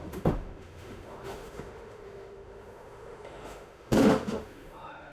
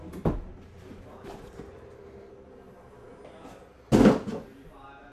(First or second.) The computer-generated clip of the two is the first